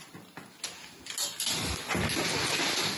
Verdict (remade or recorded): recorded